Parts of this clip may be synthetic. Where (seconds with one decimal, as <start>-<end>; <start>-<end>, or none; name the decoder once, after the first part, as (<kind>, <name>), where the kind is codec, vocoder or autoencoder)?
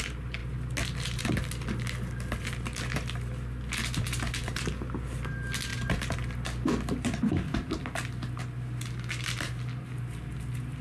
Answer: none